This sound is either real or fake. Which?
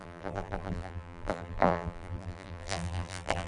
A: fake